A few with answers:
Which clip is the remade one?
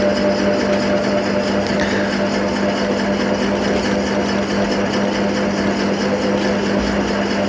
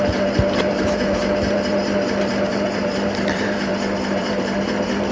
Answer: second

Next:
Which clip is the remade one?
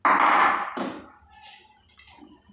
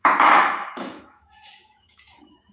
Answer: second